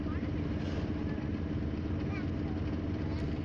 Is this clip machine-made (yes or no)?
no